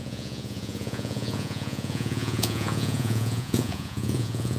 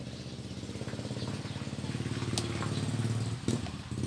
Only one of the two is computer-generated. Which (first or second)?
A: first